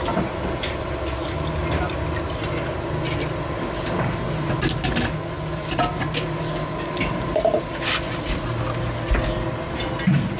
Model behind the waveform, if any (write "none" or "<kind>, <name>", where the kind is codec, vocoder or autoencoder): none